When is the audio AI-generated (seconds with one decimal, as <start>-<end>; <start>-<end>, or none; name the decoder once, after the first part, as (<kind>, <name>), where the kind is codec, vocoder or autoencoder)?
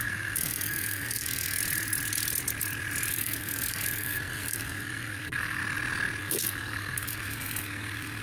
0.0-1.6 (codec, SNAC); 3.1-5.6; 6.2-8.2